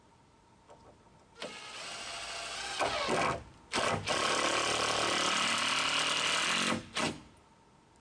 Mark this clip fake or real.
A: real